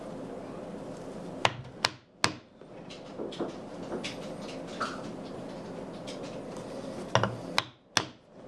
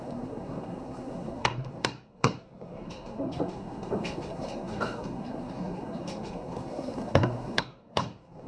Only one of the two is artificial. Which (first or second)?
second